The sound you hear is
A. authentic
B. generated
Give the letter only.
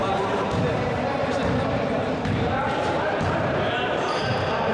B